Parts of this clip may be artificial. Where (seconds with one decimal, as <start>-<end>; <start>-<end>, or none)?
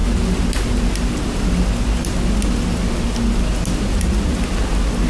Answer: none